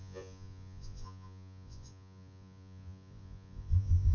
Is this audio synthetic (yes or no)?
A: yes